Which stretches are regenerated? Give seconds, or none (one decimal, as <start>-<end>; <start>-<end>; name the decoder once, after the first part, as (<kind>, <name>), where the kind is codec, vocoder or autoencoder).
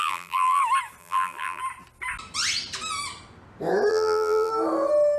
0.0-0.6 (vocoder, BigVGAN v2); 1.0-1.6; 3.9-4.5